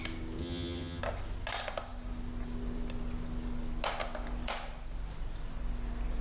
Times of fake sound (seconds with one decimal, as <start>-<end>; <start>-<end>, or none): 0.4-1.0